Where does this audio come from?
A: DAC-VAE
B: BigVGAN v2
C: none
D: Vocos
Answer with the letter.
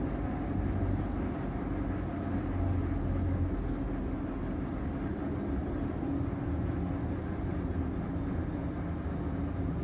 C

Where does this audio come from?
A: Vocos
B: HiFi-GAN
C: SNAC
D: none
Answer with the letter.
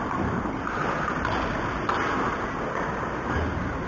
D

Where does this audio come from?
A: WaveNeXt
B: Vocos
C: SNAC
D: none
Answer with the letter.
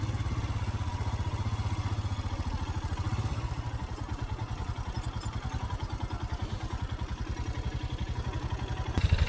D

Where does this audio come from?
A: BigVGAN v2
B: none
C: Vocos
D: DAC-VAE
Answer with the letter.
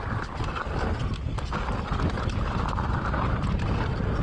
B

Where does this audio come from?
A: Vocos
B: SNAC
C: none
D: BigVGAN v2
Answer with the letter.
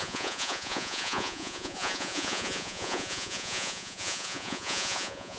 A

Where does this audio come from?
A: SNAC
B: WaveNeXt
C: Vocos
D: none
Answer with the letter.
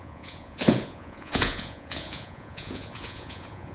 C